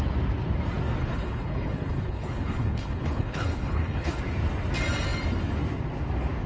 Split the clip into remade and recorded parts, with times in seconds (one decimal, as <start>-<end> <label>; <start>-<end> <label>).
0.0-1.0 recorded; 1.0-4.2 remade; 4.2-6.5 recorded